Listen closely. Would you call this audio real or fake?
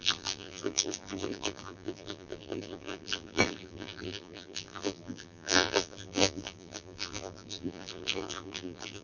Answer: fake